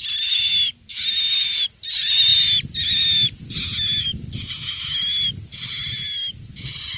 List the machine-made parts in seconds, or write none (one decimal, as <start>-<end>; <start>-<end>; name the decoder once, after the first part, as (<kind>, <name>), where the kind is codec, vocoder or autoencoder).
none